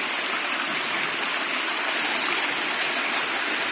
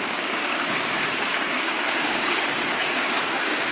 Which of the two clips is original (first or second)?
first